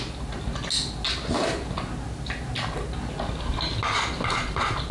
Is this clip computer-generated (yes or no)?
no